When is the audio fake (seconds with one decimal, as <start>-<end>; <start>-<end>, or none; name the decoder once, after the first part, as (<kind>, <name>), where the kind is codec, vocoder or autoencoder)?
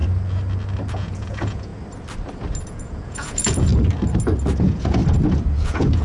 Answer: 0.9-1.7 (vocoder, Vocos); 2.7-3.7; 4.6-5.0; 5.5-6.0